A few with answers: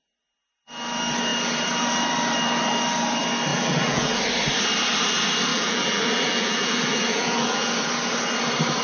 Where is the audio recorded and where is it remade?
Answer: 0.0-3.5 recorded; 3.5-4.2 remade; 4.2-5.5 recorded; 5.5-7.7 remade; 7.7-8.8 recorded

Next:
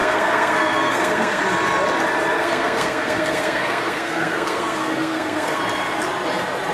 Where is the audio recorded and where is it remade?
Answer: 0.0-1.4 remade; 1.4-2.4 recorded; 2.4-5.6 remade; 5.6-6.7 recorded

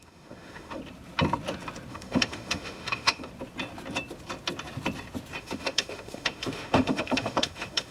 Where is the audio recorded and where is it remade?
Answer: 0.0-0.8 remade; 0.8-1.9 recorded; 1.9-3.3 remade; 3.3-5.4 recorded; 5.4-7.9 remade

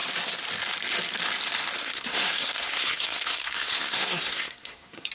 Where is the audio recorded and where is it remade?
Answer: 0.0-1.8 recorded; 1.8-5.1 remade

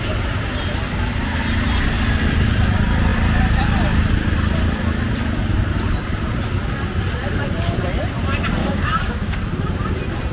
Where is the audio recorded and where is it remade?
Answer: 0.0-8.6 recorded; 8.6-9.4 remade; 9.4-10.3 recorded

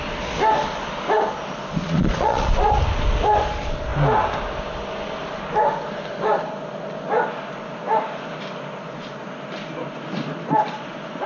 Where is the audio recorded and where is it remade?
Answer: 0.0-1.8 recorded; 1.8-2.5 remade; 2.5-11.3 recorded